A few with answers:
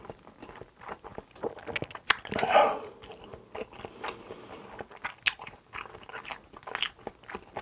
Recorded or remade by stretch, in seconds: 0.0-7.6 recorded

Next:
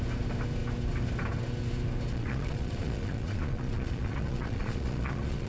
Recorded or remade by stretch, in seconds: 0.0-2.1 recorded; 2.1-5.5 remade

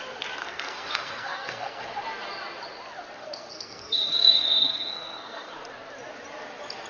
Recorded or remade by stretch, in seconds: 0.0-0.4 recorded; 0.4-1.8 remade; 1.8-3.2 recorded; 3.2-5.5 remade; 5.5-6.9 recorded

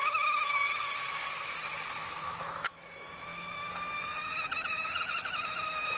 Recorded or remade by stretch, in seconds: 0.0-1.2 remade; 1.2-1.9 recorded; 1.9-6.0 remade

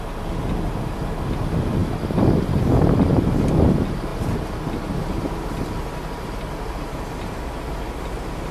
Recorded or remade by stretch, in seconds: 0.0-8.5 recorded

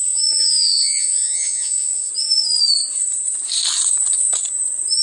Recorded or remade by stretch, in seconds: 0.0-2.1 remade; 2.1-5.0 recorded

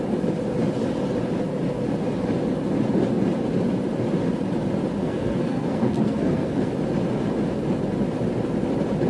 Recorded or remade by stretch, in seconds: 0.0-5.0 recorded; 5.0-6.7 remade; 6.7-9.1 recorded

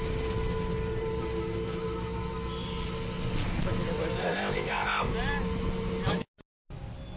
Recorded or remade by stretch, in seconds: 0.0-4.2 recorded; 4.2-5.1 remade; 5.1-7.2 recorded